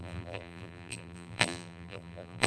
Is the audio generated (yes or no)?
yes